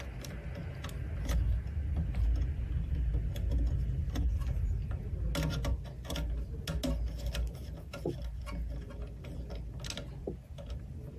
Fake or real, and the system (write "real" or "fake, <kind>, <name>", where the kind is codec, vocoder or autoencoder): real